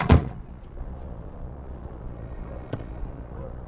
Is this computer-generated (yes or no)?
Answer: yes